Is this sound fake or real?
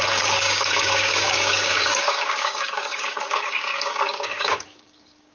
fake